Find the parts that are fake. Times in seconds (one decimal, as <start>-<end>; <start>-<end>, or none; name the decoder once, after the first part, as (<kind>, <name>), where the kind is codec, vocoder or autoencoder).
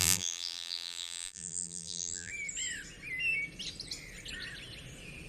0.0-2.3 (vocoder, BigVGAN v2)